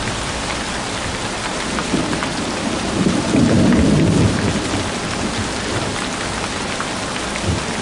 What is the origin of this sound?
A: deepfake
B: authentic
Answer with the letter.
B